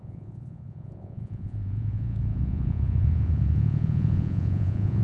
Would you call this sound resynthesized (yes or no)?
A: yes